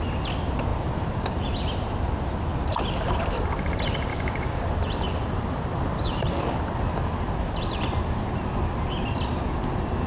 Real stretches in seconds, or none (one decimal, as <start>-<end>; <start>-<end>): 0.0-4.1; 4.6-10.1